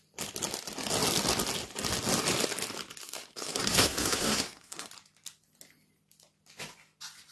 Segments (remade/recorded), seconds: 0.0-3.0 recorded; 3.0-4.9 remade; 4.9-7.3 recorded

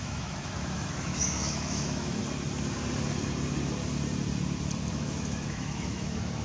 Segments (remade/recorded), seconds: 0.0-2.2 remade; 2.2-4.9 recorded; 4.9-6.4 remade

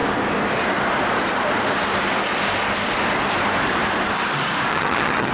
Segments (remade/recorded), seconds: 0.0-4.7 recorded; 4.7-5.3 remade

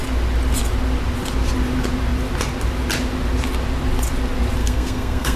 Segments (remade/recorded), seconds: 0.0-4.6 recorded; 4.6-5.4 remade

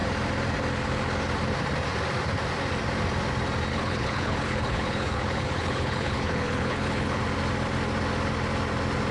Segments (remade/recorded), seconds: 0.0-3.7 recorded; 3.7-7.2 remade; 7.2-9.1 recorded

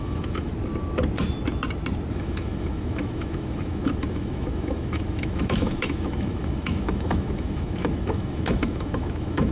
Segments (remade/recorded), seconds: 0.0-0.5 remade; 0.5-2.1 recorded; 2.1-9.5 remade